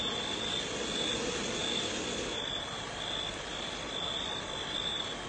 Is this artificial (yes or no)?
no